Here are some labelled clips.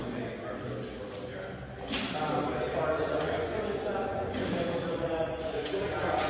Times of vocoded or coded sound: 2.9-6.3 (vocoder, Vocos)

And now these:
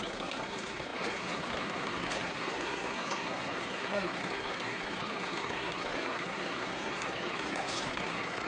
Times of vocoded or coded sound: 0.0-8.5 (codec, SNAC)

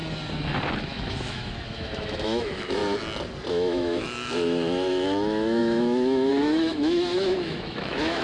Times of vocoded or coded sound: 0.8-2.8 (autoencoder, DAC-VAE); 3.5-8.2

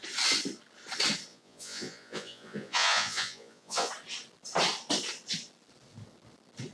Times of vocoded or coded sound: 1.3-3.9 (vocoder, Vocos)

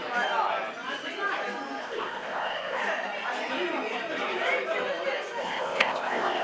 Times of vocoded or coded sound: 1.8-2.8 (codec, ZipCodec); 5.4-6.4

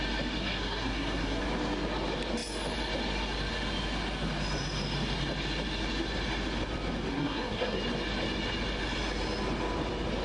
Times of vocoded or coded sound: 0.4-1.4 (codec, SNAC); 7.1-7.8